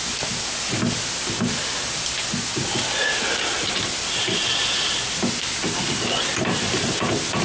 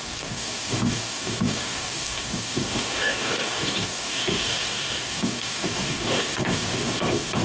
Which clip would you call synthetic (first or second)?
second